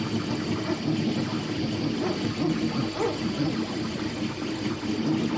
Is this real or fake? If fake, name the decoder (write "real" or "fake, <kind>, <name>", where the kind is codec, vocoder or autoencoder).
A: fake, vocoder, BigVGAN v2